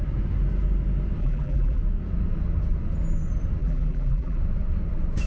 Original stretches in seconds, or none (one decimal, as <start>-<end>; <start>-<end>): 0.0-1.2; 1.8-3.6; 4.4-5.3